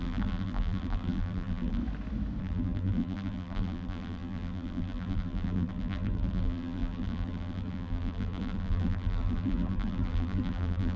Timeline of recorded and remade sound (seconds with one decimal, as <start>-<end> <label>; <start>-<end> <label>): 0.0-1.8 remade; 1.8-2.4 recorded; 2.4-11.0 remade